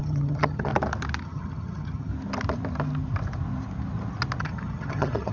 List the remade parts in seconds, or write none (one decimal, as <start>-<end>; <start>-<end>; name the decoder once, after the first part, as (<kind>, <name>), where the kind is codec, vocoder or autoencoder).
0.0-0.7 (vocoder, HiFi-GAN); 1.2-2.1; 4.4-5.3